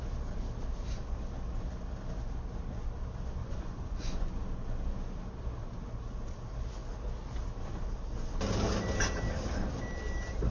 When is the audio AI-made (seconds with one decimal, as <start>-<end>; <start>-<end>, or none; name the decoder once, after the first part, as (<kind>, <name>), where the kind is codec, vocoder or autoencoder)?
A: 3.4-4.4 (vocoder, Vocos)